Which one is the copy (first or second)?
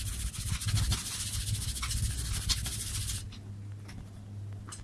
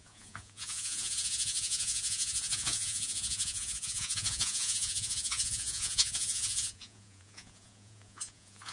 second